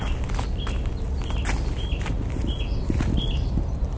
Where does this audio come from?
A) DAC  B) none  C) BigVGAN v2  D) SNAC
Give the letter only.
B